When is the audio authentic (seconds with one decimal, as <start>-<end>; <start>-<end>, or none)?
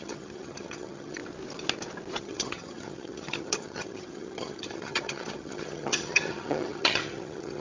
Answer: 1.2-2.2